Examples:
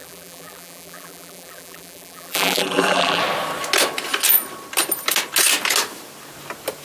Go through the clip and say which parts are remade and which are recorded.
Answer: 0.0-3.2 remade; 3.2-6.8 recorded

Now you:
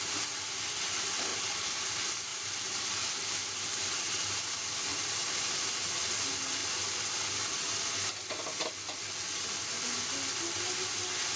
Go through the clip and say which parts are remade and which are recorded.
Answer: 0.0-1.3 recorded; 1.3-1.9 remade; 1.9-2.3 recorded; 2.3-4.4 remade; 4.4-11.4 recorded

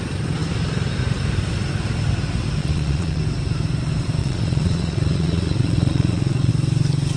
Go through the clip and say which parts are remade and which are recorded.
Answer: 0.0-2.6 recorded; 2.6-3.2 remade; 3.2-4.2 recorded; 4.2-6.5 remade; 6.5-7.2 recorded

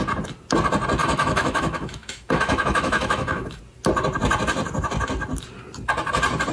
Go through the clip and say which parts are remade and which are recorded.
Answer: 0.0-1.0 recorded; 1.0-3.6 remade; 3.6-6.5 recorded

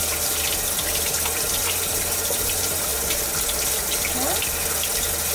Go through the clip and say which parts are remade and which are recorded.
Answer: 0.0-5.3 recorded